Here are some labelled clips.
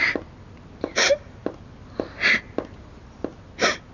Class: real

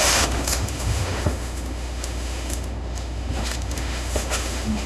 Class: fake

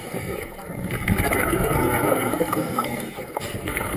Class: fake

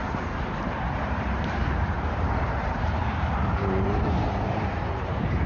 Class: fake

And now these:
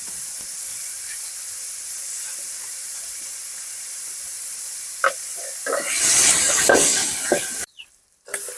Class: fake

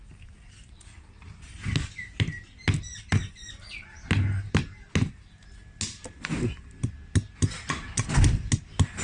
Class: real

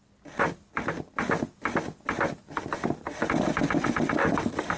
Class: real